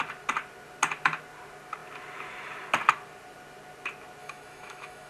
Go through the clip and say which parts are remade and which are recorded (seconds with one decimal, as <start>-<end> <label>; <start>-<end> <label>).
0.0-4.2 recorded; 4.2-5.1 remade